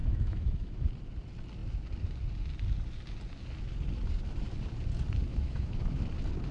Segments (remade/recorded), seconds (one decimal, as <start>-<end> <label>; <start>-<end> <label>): 0.0-0.9 remade; 0.9-5.3 recorded; 5.3-6.0 remade; 6.0-6.5 recorded